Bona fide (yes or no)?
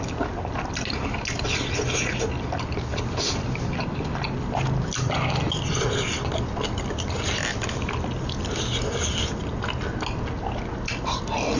yes